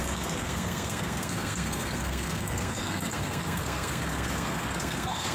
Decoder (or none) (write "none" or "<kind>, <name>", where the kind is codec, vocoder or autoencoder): codec, SNAC